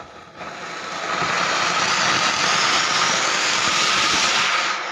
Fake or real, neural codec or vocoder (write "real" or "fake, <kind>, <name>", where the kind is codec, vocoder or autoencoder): real